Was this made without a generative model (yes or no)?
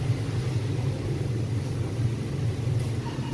yes